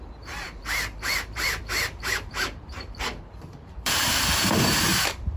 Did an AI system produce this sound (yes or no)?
yes